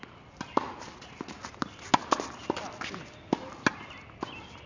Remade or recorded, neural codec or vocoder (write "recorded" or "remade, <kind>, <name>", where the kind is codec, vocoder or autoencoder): recorded